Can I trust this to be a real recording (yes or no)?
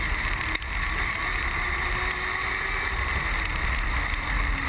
yes